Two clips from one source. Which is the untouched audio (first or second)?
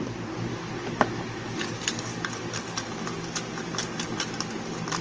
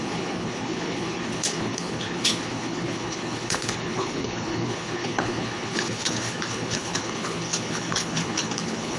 first